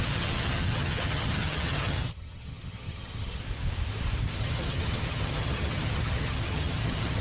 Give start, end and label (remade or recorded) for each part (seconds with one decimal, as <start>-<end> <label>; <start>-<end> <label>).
0.0-3.4 remade; 3.4-4.4 recorded; 4.4-7.2 remade